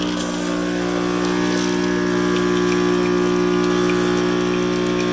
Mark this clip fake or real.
real